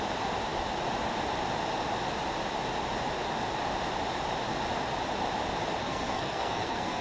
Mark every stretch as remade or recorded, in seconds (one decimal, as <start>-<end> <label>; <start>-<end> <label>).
0.0-5.8 recorded; 5.8-7.0 remade